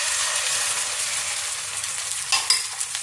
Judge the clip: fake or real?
real